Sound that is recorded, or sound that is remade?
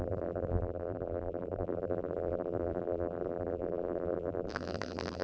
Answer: remade